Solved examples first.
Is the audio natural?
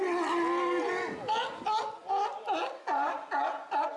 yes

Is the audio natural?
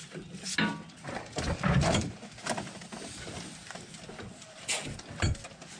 yes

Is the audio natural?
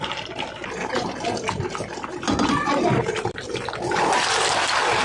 yes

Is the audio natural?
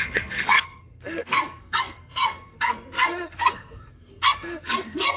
no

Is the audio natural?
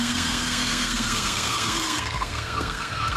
no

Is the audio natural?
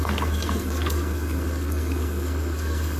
no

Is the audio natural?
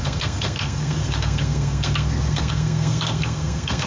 no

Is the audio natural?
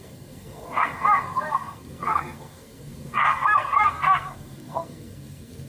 no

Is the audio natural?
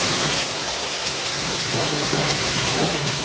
no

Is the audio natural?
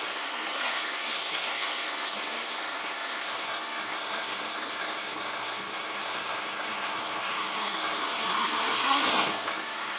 no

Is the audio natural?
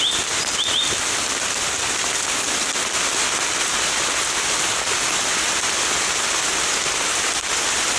yes